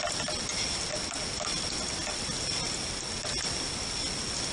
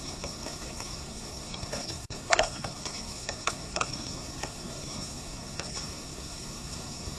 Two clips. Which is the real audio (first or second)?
first